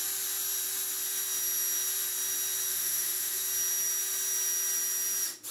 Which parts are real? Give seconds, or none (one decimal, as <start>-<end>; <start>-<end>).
0.0-2.7; 3.4-5.5